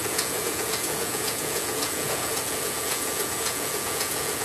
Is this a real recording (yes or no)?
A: no